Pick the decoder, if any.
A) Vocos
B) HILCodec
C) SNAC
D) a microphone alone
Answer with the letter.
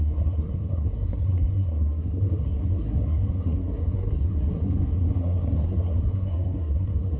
C